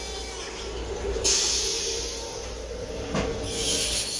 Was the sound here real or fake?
real